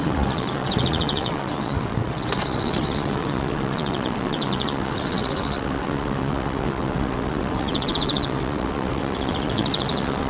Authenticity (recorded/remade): remade